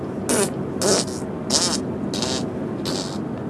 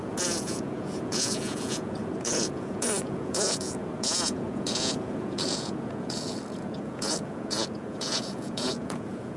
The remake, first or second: second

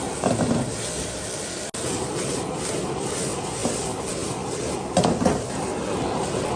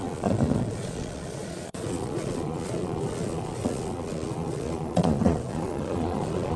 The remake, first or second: second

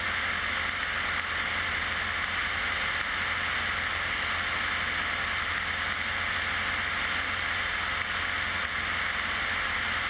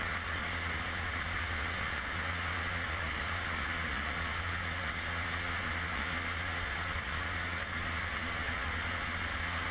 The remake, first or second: second